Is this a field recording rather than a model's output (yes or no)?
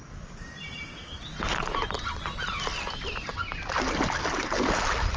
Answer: yes